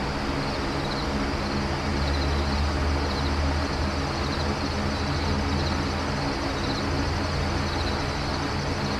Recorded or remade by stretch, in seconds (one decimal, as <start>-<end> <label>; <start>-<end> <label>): 0.0-9.0 recorded